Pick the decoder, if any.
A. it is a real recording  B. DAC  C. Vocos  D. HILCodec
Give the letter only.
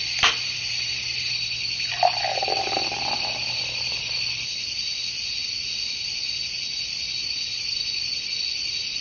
A